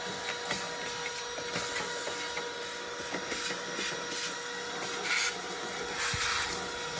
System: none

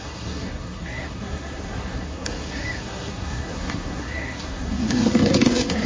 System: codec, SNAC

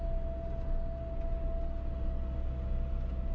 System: none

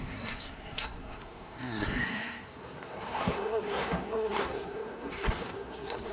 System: codec, SNAC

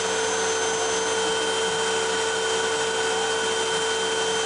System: none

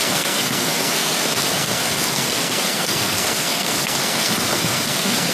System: codec, SNAC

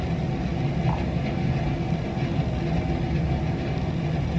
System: none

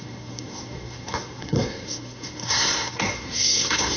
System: codec, SNAC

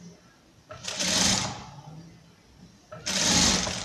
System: none